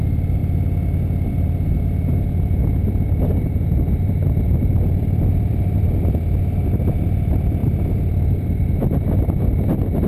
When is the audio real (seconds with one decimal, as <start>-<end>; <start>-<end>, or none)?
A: 0.4-2.3